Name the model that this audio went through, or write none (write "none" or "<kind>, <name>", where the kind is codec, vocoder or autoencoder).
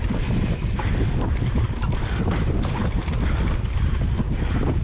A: vocoder, BigVGAN v2